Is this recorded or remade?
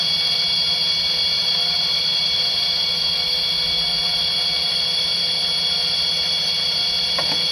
recorded